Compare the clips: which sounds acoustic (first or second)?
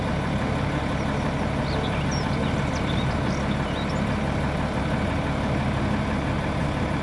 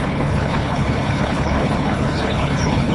first